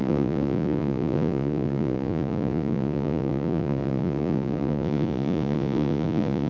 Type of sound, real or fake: fake